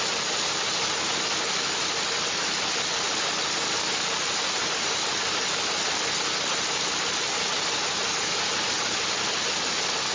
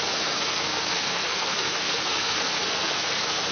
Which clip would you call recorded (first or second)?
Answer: first